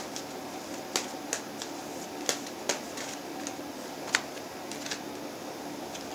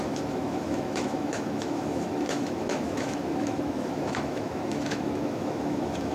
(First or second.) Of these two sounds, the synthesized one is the second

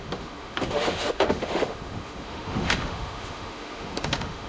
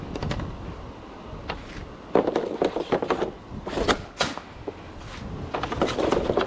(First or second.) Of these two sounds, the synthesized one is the first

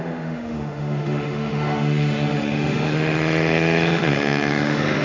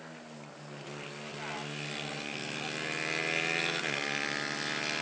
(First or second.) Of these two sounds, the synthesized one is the first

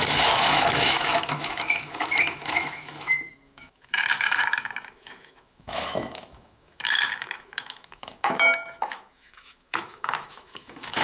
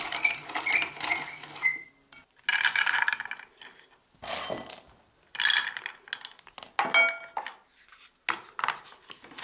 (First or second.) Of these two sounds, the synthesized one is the first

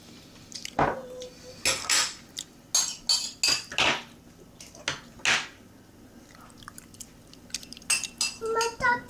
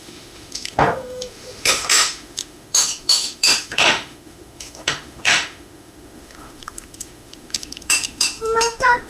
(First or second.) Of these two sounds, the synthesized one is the second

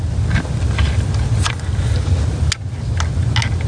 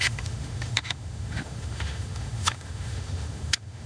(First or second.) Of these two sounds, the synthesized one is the second